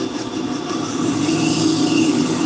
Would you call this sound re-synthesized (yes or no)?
no